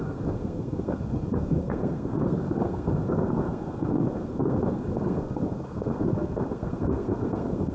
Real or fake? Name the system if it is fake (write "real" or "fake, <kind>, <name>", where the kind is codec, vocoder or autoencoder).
fake, codec, SNAC